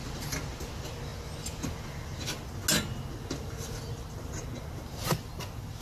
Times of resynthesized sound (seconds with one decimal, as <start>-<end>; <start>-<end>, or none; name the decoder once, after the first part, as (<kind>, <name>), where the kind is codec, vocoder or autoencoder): none